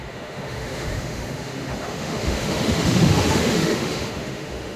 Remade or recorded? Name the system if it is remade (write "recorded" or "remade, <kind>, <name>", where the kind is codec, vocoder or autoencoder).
remade, autoencoder, DAC-VAE